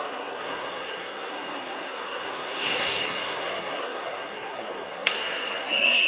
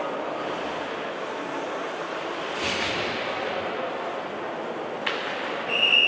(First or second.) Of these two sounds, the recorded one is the second